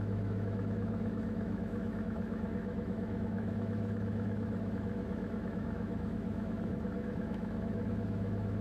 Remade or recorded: remade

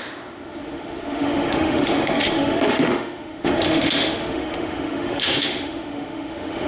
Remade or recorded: remade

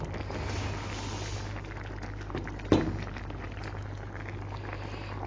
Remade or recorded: recorded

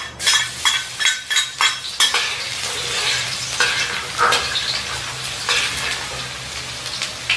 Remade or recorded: recorded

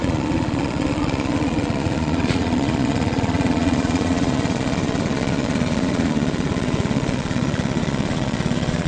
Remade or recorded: remade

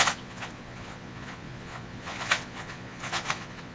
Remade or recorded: remade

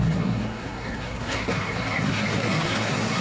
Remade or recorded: remade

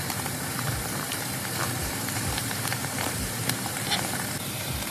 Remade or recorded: remade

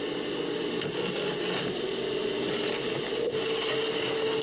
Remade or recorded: recorded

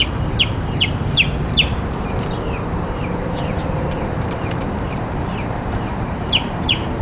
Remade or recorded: remade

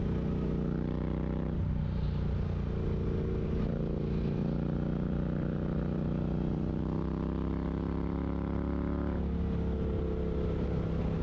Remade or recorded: recorded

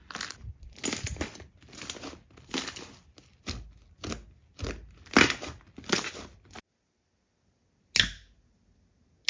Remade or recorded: recorded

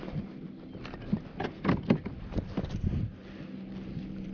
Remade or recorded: recorded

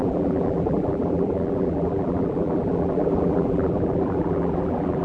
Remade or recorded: remade